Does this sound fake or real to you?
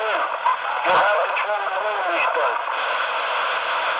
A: real